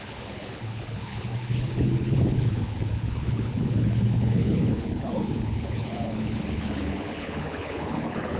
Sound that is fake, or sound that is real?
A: fake